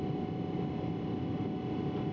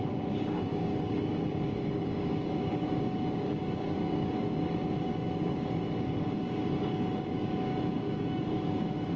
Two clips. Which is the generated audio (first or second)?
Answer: second